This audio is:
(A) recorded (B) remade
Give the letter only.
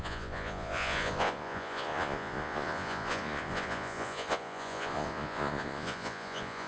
B